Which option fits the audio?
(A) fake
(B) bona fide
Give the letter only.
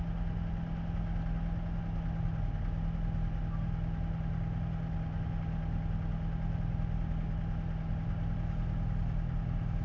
B